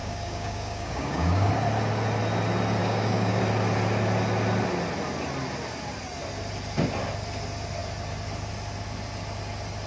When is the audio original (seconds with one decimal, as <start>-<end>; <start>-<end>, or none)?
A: 1.5-2.8; 3.4-9.9